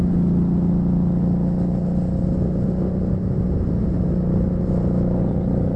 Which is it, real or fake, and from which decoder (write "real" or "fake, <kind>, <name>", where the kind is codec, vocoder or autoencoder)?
real